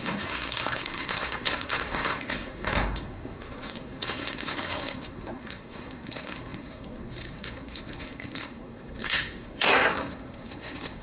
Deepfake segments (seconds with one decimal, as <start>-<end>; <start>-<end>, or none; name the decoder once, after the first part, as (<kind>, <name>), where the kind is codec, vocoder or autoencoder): 0.0-11.0 (codec, SNAC)